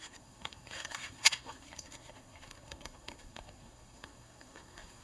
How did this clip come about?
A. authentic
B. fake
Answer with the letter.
B